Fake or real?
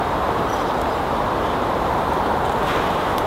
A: fake